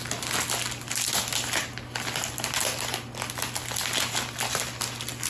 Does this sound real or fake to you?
real